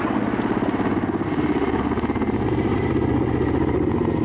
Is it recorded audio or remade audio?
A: recorded